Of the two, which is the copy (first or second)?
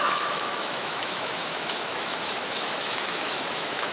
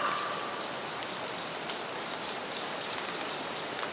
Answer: first